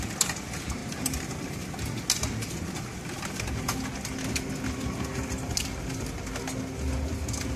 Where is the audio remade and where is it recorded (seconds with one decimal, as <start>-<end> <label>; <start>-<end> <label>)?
0.0-7.6 recorded